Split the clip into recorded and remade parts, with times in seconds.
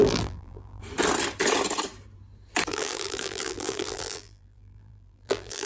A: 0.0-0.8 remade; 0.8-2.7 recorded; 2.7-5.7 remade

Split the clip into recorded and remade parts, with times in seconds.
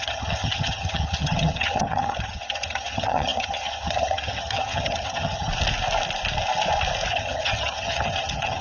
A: 0.0-5.5 remade; 5.5-7.1 recorded; 7.1-8.6 remade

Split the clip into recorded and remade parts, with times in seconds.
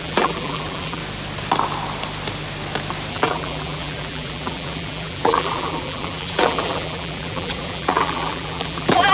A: 0.0-1.0 remade; 1.0-3.1 recorded; 3.1-9.1 remade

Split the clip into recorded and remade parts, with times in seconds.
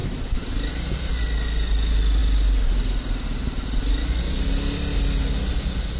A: 0.0-0.7 remade; 0.7-6.0 recorded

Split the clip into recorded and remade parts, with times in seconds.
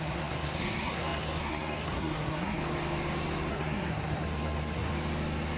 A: 0.0-2.6 remade; 2.6-3.5 recorded; 3.5-4.9 remade; 4.9-5.6 recorded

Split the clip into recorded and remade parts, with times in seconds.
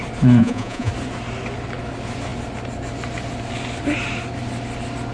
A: 0.0-0.4 recorded; 0.4-0.9 remade; 0.9-5.1 recorded